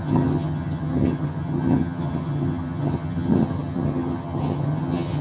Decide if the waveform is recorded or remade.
remade